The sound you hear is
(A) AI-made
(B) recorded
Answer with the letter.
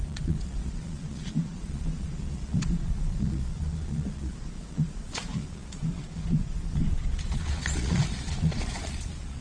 A